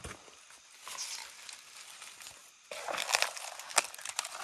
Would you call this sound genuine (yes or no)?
yes